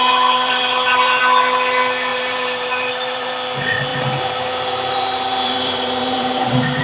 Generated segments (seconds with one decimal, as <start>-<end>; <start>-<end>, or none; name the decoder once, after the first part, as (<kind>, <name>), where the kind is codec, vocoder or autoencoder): 0.0-1.2 (vocoder, BigVGAN v2); 2.1-3.3; 3.9-6.8